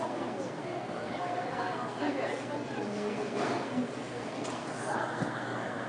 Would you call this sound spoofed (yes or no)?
yes